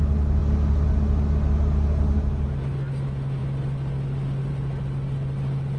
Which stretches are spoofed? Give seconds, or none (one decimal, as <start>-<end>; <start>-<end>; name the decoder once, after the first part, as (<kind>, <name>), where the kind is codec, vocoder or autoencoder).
none